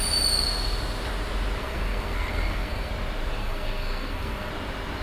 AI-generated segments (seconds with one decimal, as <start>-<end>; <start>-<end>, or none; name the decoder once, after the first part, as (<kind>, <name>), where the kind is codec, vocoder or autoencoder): 1.6-2.9 (codec, SNAC); 3.4-4.5